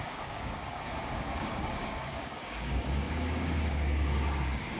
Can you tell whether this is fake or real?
fake